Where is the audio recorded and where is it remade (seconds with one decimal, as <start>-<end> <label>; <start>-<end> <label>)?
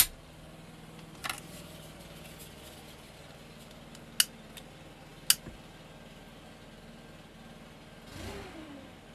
0.0-9.1 recorded